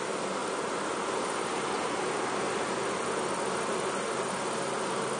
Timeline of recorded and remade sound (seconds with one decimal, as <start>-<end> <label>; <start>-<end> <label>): 0.0-5.2 recorded

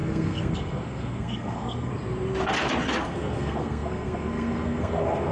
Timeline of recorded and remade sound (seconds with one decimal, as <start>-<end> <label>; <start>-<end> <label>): 0.0-1.9 remade; 1.9-3.0 recorded; 3.0-5.3 remade

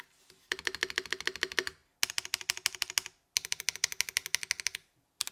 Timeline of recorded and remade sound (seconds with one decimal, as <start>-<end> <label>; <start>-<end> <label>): 0.0-5.3 recorded

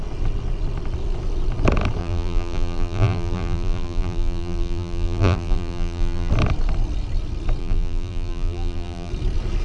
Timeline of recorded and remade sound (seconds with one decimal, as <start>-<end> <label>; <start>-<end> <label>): 0.0-2.0 recorded; 2.0-6.3 remade; 6.3-7.6 recorded; 7.6-9.1 remade; 9.1-9.6 recorded

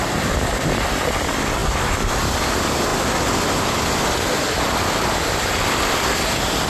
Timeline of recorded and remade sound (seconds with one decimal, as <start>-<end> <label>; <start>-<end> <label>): 0.0-6.7 recorded